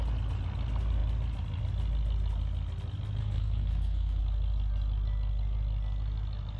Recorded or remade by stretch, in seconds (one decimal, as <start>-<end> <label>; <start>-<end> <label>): 0.0-3.2 recorded; 3.2-4.2 remade; 4.2-6.6 recorded